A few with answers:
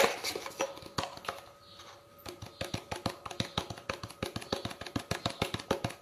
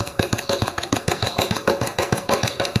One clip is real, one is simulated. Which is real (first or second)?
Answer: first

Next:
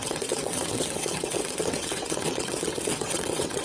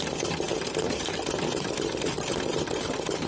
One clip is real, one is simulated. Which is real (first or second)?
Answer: second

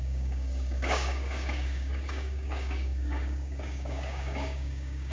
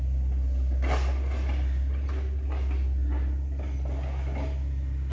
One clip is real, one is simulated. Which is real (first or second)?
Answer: second